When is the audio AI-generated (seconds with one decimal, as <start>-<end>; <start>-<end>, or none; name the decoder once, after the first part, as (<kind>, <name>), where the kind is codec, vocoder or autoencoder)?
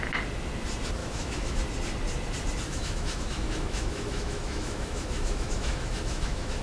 1.0-1.6 (autoencoder, DAC-VAE); 2.7-6.6